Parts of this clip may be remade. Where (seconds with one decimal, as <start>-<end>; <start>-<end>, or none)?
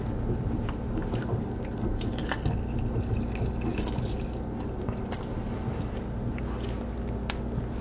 none